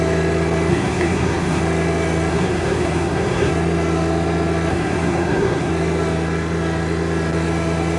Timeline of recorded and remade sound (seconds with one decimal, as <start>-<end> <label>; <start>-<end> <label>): 0.0-0.7 recorded; 0.7-1.6 remade; 1.6-2.3 recorded; 2.3-3.5 remade; 3.5-4.7 recorded; 4.7-5.7 remade; 5.7-8.0 recorded